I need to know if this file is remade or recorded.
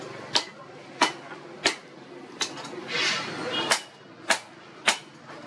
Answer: recorded